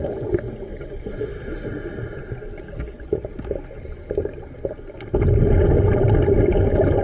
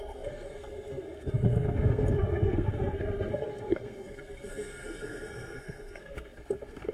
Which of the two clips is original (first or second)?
first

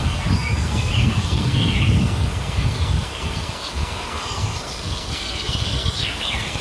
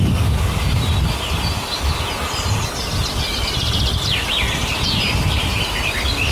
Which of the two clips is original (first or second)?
second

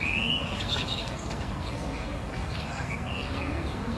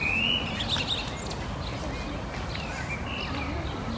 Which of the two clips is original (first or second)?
second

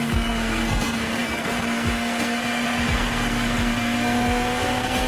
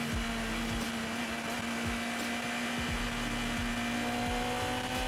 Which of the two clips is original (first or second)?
second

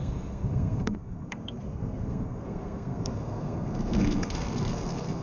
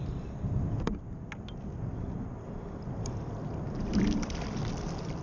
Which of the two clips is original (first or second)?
second